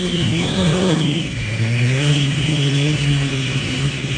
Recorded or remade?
remade